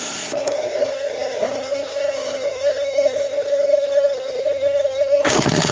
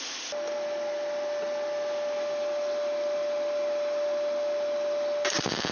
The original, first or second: second